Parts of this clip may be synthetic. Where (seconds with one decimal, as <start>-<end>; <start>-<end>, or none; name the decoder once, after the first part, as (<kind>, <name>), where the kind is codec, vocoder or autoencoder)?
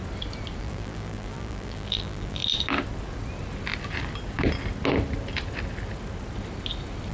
0.6-2.4 (vocoder, BigVGAN v2)